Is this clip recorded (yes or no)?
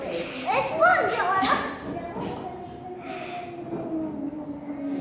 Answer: yes